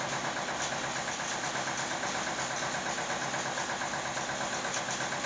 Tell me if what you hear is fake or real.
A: real